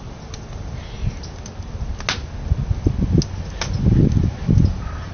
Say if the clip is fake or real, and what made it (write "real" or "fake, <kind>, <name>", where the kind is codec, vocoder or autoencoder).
real